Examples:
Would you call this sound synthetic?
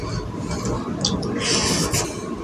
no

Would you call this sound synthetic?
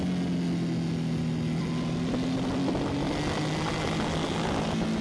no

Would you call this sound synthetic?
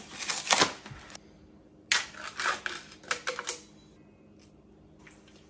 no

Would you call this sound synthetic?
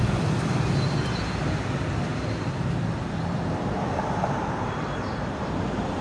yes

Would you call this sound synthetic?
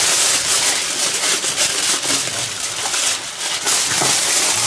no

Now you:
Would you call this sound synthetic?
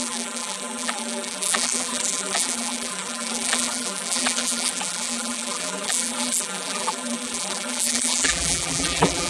yes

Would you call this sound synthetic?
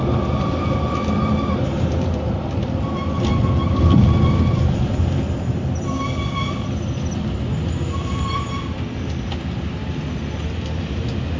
no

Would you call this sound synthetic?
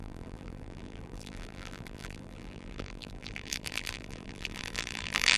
yes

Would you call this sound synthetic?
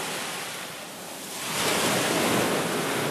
no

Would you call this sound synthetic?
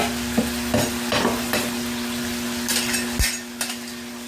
no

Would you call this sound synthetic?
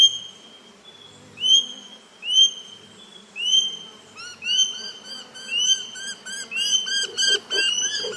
no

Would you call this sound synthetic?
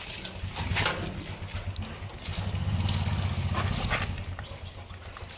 no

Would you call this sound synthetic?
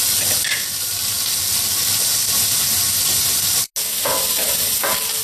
no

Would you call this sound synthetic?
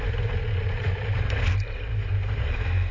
yes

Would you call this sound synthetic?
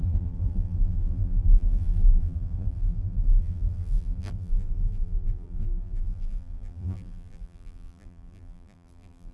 yes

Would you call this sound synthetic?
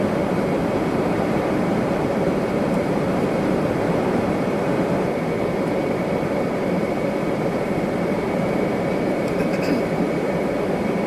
yes